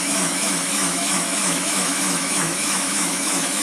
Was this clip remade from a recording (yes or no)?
yes